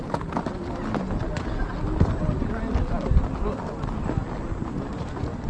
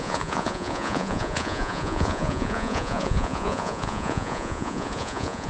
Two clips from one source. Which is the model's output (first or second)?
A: second